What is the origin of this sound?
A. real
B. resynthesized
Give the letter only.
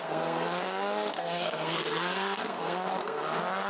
B